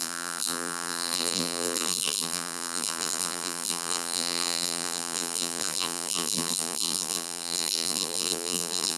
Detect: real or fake fake